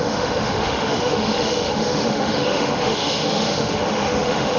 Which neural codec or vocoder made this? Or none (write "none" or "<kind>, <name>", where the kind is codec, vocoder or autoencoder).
autoencoder, DAC-VAE